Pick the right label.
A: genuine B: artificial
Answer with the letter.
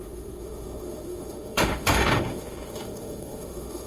B